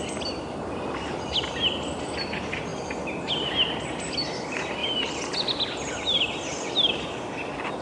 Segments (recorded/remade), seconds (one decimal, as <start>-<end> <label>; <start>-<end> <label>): 0.0-7.8 recorded